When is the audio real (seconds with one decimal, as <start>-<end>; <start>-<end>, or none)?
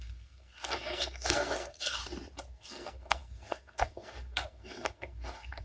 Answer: 2.0-2.5